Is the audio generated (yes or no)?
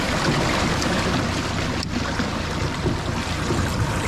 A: no